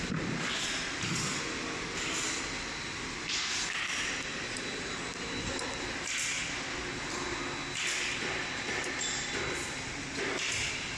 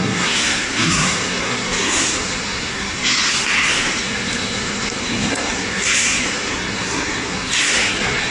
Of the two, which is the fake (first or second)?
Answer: second